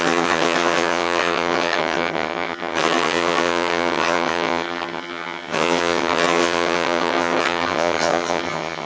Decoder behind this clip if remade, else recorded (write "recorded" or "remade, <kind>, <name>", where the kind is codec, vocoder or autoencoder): remade, vocoder, HiFi-GAN